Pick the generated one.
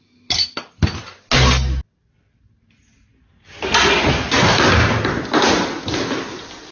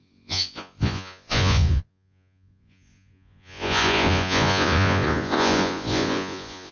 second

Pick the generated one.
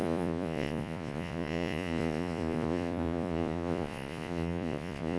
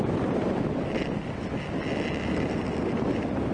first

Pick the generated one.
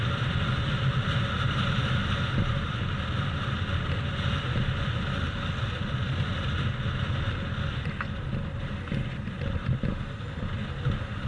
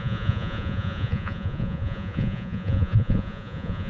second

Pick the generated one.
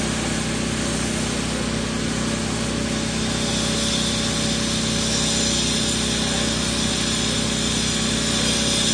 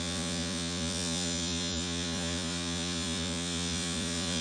second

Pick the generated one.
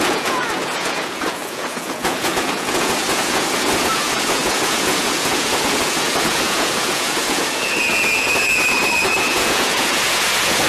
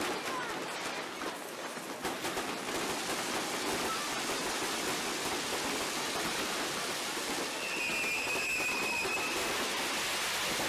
first